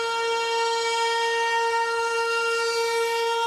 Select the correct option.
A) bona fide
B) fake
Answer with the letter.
A